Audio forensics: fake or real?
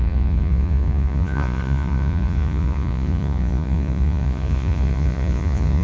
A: fake